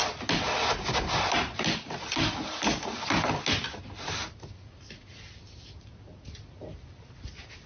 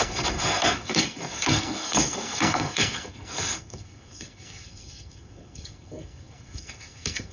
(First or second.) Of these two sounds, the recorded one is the first